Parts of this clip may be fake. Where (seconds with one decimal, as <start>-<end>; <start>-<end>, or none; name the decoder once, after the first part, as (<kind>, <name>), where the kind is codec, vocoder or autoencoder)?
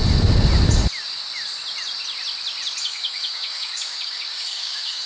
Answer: 2.8-5.1 (codec, DAC)